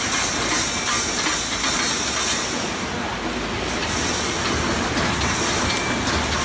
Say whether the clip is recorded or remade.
recorded